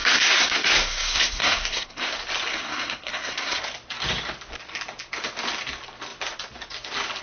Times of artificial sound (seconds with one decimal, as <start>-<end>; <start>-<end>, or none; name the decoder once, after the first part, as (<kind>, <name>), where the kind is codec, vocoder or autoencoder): 0.0-2.1 (codec, SNAC); 2.5-3.6